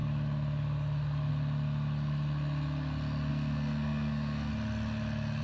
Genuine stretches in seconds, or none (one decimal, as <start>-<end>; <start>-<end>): 0.0-3.3; 4.5-5.4